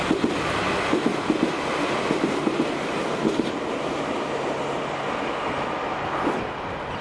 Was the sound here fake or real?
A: real